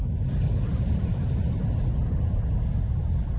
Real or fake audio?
real